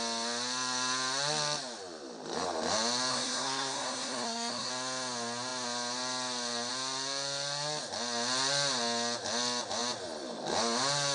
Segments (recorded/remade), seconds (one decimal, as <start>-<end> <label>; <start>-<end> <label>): 0.0-3.1 recorded; 3.1-4.7 remade; 4.7-11.1 recorded